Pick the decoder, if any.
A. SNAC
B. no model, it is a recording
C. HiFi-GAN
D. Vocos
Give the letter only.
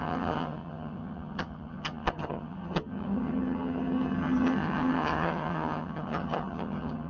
C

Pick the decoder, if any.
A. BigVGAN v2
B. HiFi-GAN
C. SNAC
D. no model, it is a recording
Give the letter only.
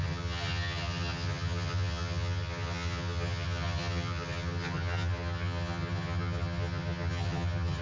B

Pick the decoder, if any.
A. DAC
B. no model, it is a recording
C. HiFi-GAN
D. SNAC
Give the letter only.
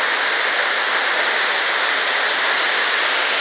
B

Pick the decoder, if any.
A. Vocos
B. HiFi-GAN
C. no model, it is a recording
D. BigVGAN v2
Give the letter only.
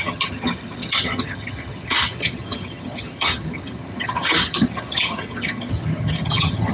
B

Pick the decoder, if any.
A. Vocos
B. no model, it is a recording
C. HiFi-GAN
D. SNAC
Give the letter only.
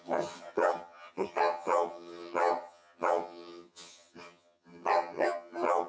C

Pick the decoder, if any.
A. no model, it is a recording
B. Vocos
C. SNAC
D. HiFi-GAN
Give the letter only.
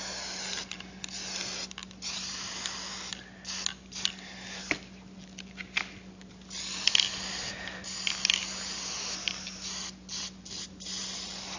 A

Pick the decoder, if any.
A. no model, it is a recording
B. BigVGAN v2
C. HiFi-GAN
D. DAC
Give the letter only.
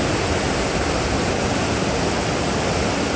A